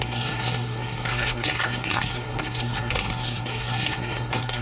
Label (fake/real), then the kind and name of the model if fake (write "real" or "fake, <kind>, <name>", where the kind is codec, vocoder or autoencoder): fake, codec, SNAC